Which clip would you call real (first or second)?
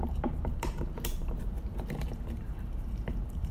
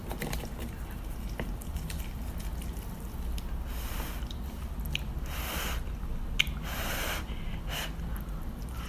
second